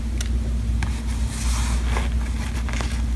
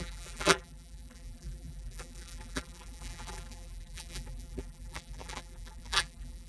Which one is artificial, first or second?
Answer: second